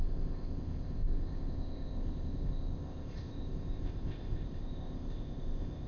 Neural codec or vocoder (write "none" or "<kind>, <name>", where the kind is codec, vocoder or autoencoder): codec, ZipCodec